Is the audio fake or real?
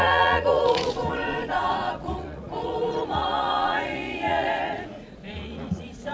fake